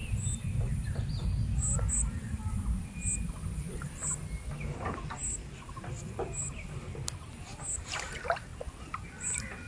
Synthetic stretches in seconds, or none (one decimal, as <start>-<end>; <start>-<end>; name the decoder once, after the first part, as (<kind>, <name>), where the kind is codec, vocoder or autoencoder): none